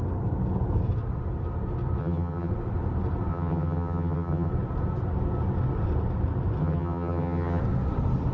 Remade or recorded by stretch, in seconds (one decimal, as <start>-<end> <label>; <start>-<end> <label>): 0.0-2.0 recorded; 2.0-2.5 remade; 2.5-3.3 recorded; 3.3-4.5 remade; 4.5-6.6 recorded; 6.6-7.6 remade; 7.6-8.3 recorded